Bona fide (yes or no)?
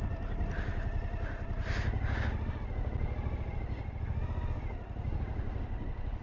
yes